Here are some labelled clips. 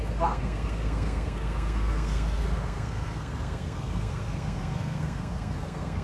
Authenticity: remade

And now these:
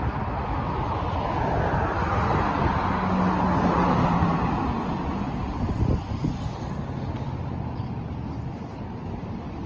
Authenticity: recorded